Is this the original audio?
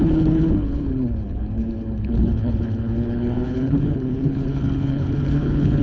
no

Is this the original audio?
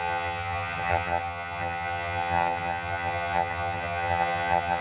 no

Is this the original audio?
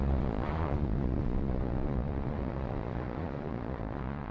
no